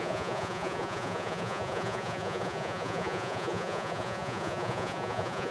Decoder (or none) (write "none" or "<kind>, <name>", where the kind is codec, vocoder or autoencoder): vocoder, Vocos